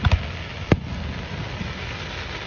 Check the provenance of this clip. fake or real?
real